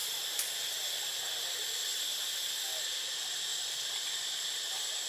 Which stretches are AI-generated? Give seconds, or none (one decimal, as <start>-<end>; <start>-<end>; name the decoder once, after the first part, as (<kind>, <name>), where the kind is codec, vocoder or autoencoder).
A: 3.1-5.1 (vocoder, BigVGAN v2)